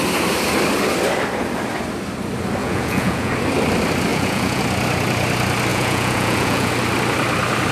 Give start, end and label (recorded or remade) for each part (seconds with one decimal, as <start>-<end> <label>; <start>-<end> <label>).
0.0-2.6 recorded; 2.6-3.3 remade; 3.3-4.1 recorded; 4.1-4.6 remade; 4.6-5.7 recorded; 5.7-6.7 remade; 6.7-7.7 recorded